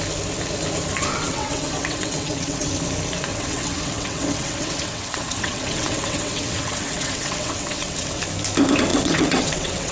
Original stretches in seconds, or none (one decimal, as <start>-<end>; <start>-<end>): 0.0-1.1; 2.7-3.3; 8.2-8.9